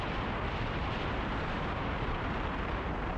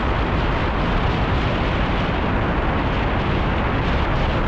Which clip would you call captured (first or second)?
second